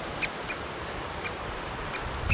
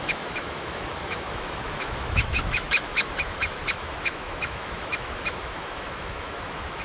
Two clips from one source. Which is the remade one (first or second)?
second